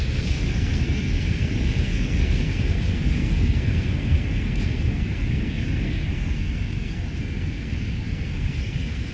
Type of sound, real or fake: fake